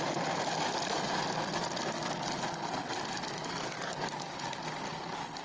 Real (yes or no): yes